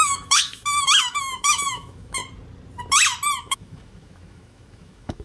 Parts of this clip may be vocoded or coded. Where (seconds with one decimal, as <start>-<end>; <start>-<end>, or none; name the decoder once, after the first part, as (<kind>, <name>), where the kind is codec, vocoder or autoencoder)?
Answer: 0.0-2.2 (autoencoder, DAC-VAE); 3.4-5.2